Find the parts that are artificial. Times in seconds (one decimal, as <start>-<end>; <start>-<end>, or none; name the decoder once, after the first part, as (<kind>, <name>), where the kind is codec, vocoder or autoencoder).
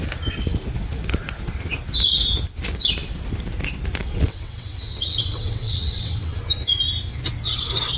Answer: 4.0-6.4 (vocoder, WaveNeXt)